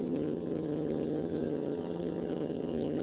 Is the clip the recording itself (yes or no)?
no